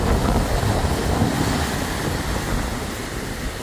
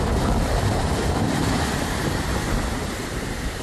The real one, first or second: first